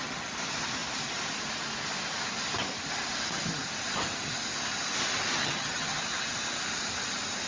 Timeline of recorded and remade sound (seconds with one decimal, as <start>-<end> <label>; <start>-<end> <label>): 0.0-5.4 recorded; 5.4-6.0 remade; 6.0-7.5 recorded